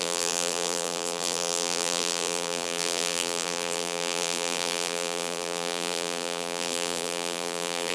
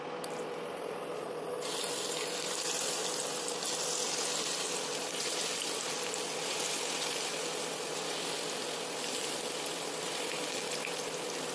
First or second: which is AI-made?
first